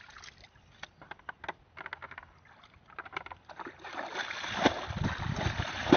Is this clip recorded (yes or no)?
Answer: yes